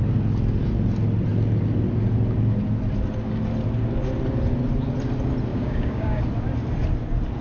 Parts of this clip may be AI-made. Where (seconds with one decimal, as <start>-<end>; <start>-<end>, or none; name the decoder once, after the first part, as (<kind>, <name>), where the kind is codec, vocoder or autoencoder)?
5.5-6.2 (codec, DAC)